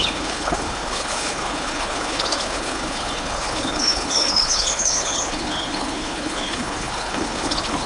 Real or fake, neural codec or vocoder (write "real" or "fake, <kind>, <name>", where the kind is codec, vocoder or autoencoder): fake, codec, HILCodec